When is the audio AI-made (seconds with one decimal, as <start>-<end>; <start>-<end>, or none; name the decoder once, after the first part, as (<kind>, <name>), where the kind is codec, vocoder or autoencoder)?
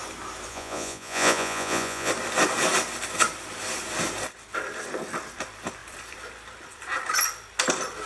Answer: 0.5-2.1 (vocoder, Vocos)